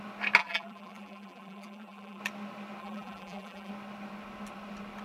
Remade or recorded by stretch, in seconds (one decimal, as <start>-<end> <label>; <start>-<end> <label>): 0.0-0.4 recorded; 0.4-2.2 remade; 2.2-2.8 recorded; 2.8-3.7 remade; 3.7-5.0 recorded